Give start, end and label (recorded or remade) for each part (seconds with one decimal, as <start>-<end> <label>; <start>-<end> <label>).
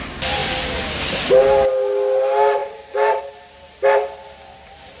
0.0-5.0 recorded